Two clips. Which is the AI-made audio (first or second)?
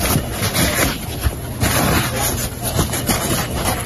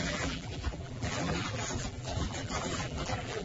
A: second